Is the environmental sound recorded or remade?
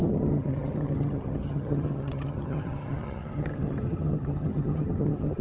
remade